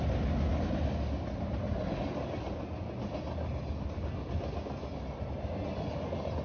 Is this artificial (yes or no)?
no